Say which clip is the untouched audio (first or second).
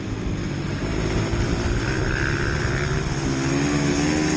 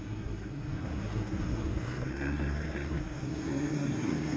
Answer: first